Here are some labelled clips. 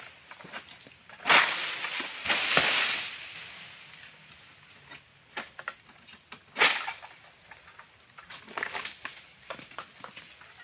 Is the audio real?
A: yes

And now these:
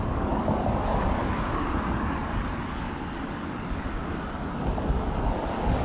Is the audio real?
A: no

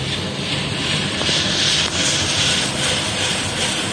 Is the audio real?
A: yes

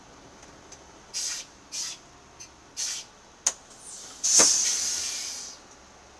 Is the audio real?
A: yes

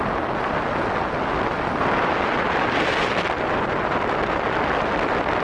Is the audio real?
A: yes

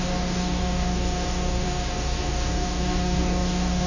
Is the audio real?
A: no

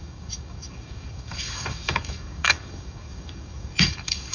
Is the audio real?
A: no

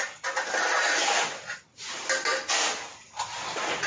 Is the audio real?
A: yes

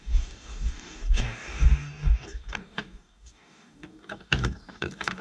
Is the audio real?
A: no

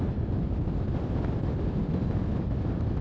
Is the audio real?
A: yes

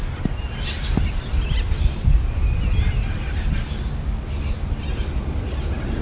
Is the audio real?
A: yes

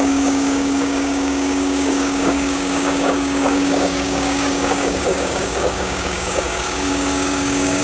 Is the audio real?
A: no